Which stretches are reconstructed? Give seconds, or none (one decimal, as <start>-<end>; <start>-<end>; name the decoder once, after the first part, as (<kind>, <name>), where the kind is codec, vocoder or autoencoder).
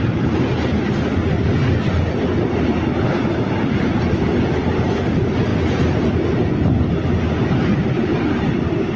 none